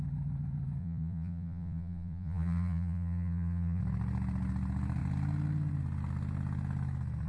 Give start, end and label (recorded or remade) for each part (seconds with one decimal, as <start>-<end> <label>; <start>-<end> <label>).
0.0-0.8 recorded; 0.8-3.8 remade; 3.8-7.3 recorded